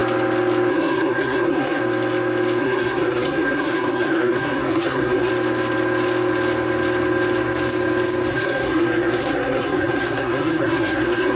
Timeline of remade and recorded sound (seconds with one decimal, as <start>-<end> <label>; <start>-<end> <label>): 0.0-0.7 recorded; 0.7-1.8 remade; 1.8-2.6 recorded; 2.6-5.3 remade; 5.3-8.3 recorded; 8.3-11.4 remade